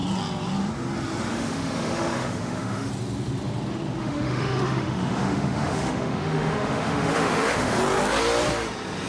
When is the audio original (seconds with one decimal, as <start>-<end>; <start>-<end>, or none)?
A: 0.0-1.3; 2.9-4.0; 7.8-9.1